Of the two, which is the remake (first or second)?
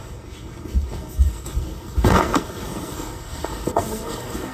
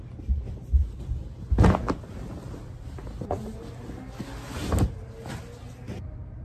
first